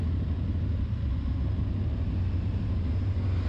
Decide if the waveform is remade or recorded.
recorded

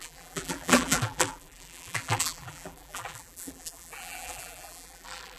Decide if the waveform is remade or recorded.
remade